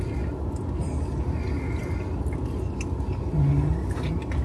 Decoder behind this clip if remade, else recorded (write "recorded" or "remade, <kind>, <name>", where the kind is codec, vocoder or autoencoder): recorded